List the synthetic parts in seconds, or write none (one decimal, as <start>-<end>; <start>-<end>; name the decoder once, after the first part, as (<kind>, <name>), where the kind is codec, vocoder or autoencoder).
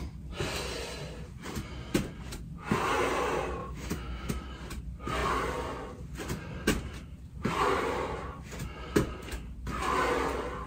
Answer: 3.6-4.3 (autoencoder, DAC-VAE)